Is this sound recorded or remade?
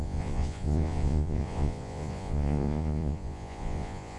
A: remade